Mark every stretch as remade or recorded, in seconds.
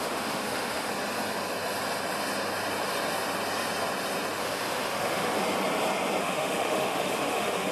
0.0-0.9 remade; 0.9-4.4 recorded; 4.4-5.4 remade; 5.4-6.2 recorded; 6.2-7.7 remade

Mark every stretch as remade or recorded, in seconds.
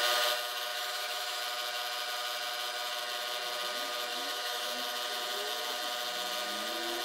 0.0-0.7 recorded; 0.7-1.4 remade; 1.4-4.1 recorded; 4.1-4.7 remade; 4.7-7.0 recorded